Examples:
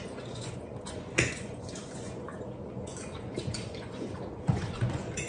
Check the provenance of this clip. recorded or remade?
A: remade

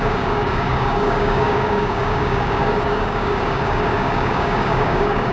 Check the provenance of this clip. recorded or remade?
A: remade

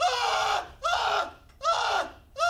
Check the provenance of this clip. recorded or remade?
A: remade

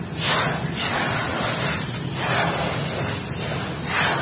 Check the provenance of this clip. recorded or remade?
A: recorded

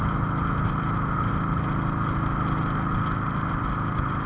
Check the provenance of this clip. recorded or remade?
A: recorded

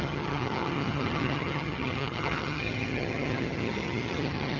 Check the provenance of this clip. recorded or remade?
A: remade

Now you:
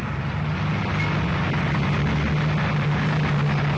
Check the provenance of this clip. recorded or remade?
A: recorded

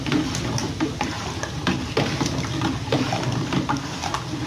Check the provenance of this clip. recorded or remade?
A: recorded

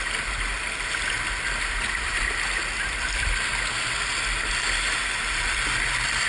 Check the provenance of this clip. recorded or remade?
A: recorded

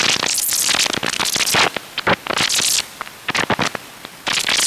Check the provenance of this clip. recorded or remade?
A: recorded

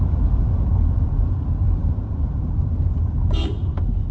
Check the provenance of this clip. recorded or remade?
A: remade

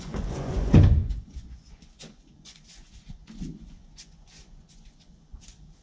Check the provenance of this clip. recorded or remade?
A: remade